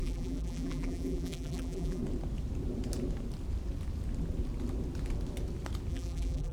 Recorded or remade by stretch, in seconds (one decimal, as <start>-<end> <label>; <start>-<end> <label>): 0.0-2.0 remade; 2.0-5.9 recorded; 5.9-6.5 remade